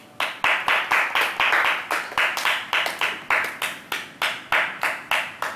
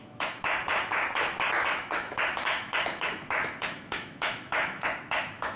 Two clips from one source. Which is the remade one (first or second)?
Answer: second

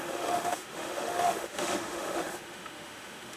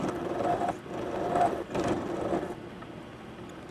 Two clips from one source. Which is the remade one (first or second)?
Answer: first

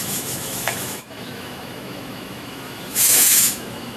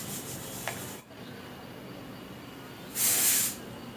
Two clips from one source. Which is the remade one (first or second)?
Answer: first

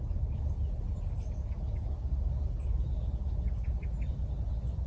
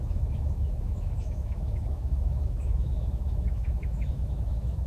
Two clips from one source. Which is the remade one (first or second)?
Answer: second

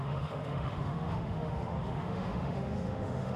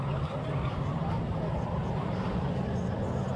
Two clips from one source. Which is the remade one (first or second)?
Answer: first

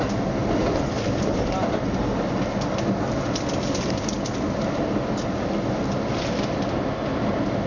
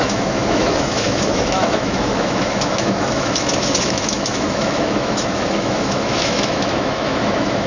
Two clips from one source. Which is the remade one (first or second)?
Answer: second